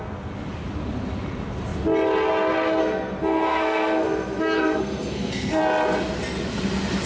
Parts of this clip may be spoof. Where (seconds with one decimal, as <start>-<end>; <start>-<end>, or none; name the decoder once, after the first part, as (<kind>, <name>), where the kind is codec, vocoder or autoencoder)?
2.8-5.6 (codec, SNAC)